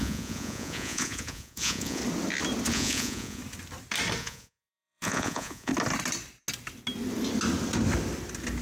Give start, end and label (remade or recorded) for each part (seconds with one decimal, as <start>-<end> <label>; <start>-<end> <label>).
0.0-2.0 remade; 2.0-2.7 recorded; 2.7-3.4 remade; 3.4-4.2 recorded; 4.2-5.7 remade; 5.7-8.6 recorded